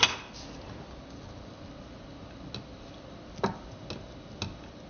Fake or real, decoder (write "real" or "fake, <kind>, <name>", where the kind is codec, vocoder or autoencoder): real